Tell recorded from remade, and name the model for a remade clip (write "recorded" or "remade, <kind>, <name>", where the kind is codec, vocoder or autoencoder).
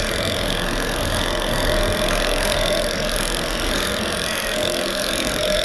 remade, codec, SNAC